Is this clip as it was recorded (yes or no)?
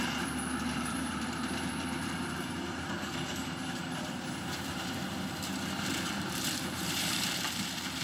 no